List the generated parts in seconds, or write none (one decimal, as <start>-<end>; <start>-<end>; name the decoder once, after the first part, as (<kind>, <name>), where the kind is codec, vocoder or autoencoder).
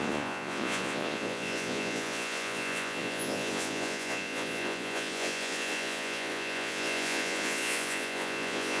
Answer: 0.0-8.8 (vocoder, Vocos)